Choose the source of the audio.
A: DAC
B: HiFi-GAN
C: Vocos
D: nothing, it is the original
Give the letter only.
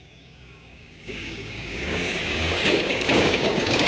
A